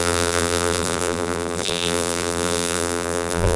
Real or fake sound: fake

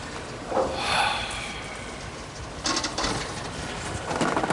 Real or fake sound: real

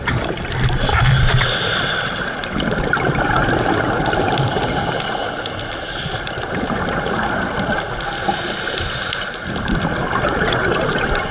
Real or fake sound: fake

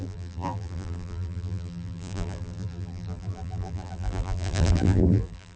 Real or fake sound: fake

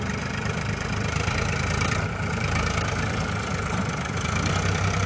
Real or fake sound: fake